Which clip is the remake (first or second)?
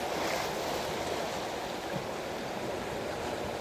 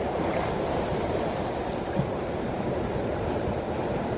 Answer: second